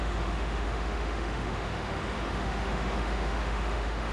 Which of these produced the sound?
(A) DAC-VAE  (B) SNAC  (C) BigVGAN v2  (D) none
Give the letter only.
A